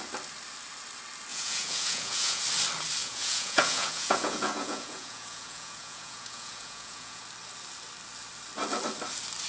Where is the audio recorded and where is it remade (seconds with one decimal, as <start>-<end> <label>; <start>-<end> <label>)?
0.0-1.3 recorded; 1.3-2.4 remade; 2.4-3.0 recorded; 3.0-7.2 remade; 7.2-9.5 recorded